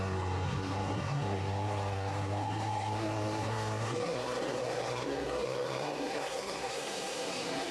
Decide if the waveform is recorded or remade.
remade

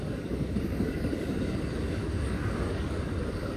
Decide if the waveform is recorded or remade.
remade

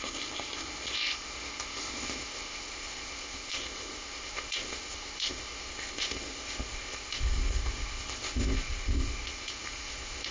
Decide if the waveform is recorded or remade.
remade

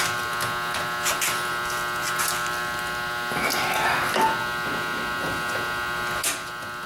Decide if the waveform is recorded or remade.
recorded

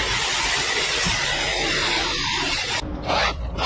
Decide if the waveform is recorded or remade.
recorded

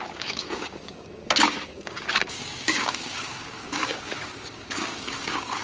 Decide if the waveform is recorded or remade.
remade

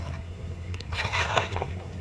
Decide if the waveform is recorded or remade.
remade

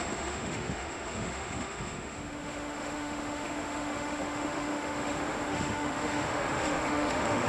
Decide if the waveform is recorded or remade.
remade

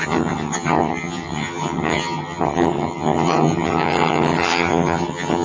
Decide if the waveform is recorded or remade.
remade